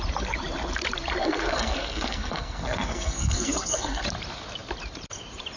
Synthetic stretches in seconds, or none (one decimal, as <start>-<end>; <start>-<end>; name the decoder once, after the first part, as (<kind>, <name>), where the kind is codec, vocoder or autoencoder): 1.2-4.0 (codec, SNAC)